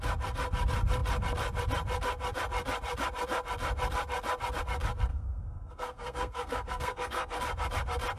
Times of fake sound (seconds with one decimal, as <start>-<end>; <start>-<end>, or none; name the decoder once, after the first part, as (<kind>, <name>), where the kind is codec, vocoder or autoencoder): 5.1-7.4 (codec, SNAC)